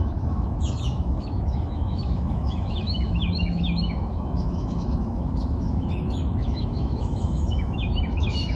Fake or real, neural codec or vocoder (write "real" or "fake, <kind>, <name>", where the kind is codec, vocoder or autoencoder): fake, autoencoder, DAC-VAE